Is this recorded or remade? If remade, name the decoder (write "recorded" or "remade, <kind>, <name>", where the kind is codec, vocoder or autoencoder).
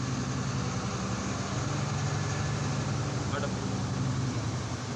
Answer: recorded